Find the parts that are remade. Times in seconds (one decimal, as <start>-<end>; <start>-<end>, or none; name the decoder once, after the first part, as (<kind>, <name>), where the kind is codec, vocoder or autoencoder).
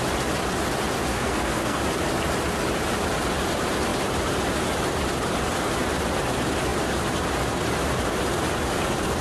1.1-1.8 (codec, SNAC)